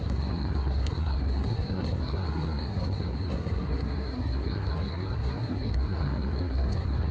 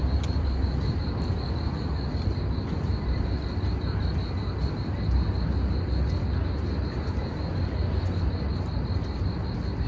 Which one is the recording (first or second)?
second